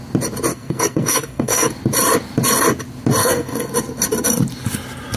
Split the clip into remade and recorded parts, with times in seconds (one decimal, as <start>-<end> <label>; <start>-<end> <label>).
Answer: 0.0-0.5 recorded; 0.5-1.7 remade; 1.7-3.2 recorded; 3.2-3.7 remade; 3.7-5.2 recorded